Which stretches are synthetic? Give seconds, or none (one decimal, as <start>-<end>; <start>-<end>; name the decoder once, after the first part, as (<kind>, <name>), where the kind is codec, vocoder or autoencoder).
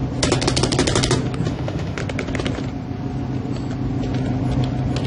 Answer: 1.5-2.0 (autoencoder, DAC-VAE)